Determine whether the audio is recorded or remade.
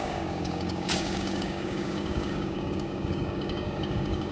remade